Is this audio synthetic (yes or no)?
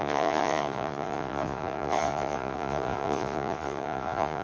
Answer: yes